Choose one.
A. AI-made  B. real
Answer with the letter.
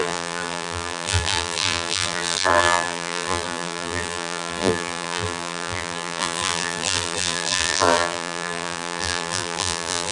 A